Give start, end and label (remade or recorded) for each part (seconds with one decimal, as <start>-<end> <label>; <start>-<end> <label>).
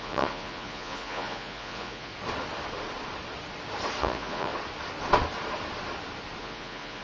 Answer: 0.0-2.1 remade; 2.1-4.0 recorded; 4.0-4.5 remade; 4.5-6.4 recorded; 6.4-7.0 remade